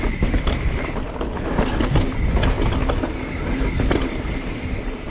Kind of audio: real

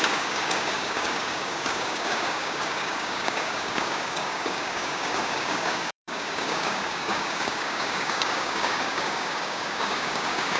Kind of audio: fake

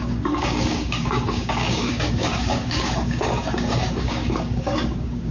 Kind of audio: fake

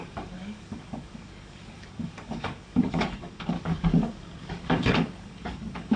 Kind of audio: fake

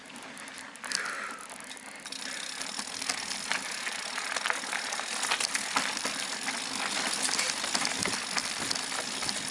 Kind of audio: real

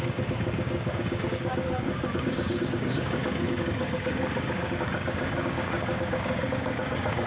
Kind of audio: fake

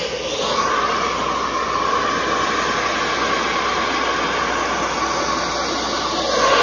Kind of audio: real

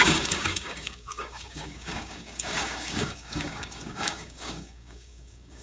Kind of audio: fake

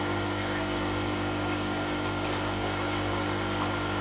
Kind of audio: fake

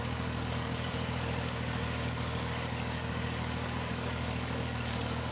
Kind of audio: fake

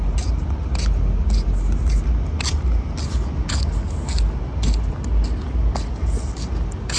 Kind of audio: real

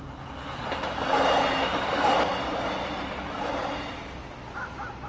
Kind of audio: real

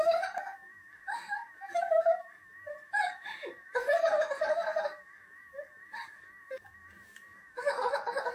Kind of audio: fake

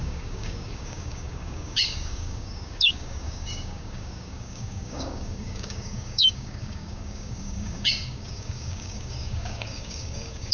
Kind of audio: fake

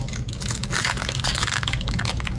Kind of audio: fake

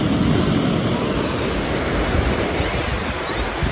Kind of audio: real